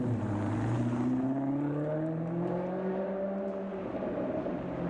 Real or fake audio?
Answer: real